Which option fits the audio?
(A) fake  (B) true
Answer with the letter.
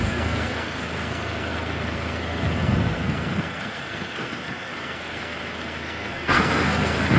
A